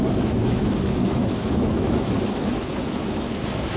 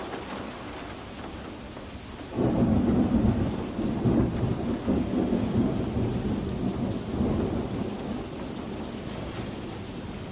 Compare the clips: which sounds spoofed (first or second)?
first